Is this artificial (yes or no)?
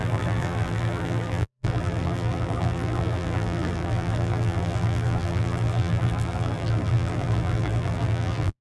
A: yes